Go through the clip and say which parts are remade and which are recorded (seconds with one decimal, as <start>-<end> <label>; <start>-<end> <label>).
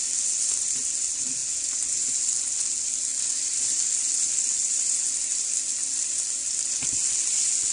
0.0-7.7 recorded